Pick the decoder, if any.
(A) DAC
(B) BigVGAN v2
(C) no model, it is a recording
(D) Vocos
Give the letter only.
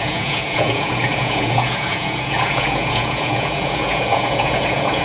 D